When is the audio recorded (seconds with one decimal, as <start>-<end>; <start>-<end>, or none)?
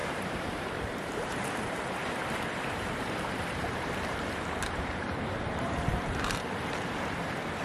none